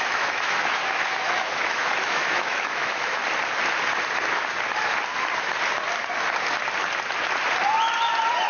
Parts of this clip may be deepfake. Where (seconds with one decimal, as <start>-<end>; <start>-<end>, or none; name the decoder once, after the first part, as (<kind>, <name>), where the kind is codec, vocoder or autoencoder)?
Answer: 0.0-3.2 (autoencoder, DAC-VAE)